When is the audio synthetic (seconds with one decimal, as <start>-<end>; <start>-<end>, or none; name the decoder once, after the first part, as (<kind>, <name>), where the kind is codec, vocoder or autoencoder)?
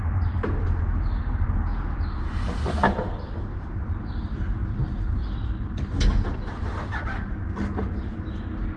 3.5-4.1 (vocoder, BigVGAN v2)